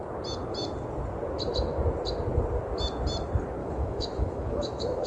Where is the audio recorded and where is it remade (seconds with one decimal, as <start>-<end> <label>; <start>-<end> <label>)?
0.0-3.6 recorded; 3.6-5.1 remade